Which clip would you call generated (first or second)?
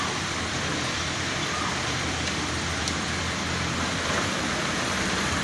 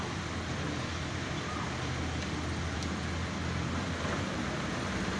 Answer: first